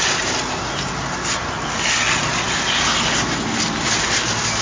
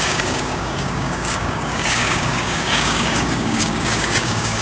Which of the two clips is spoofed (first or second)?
second